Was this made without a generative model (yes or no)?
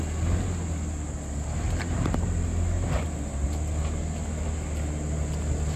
yes